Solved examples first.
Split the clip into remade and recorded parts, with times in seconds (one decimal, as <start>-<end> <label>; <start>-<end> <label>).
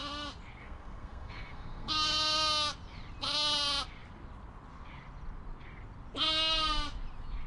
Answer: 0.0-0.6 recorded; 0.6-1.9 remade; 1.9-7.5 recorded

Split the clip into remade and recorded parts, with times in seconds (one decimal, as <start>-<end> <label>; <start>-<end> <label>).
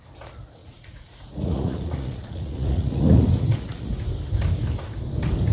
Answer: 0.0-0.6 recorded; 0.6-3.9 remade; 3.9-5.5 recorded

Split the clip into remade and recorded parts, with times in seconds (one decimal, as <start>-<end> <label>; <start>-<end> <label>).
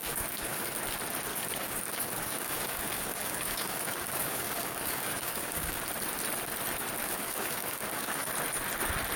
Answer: 0.0-0.7 remade; 0.7-1.3 recorded; 1.3-5.8 remade; 5.8-7.0 recorded; 7.0-8.3 remade; 8.3-9.2 recorded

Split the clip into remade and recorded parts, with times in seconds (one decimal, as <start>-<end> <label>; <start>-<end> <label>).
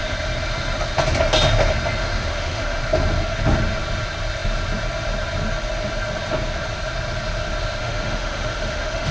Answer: 0.0-2.0 recorded; 2.0-2.8 remade; 2.8-7.8 recorded; 7.8-9.1 remade